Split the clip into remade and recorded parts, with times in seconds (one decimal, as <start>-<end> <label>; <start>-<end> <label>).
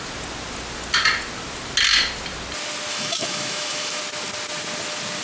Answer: 0.0-2.9 recorded; 2.9-4.0 remade; 4.0-5.2 recorded